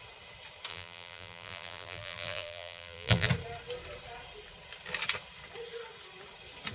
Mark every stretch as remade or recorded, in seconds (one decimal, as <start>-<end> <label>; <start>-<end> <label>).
0.0-0.7 recorded; 0.7-3.3 remade; 3.3-6.7 recorded